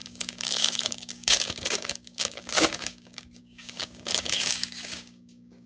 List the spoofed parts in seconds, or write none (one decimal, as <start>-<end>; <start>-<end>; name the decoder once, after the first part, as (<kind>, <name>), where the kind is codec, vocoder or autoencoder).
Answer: 0.0-5.7 (codec, DAC)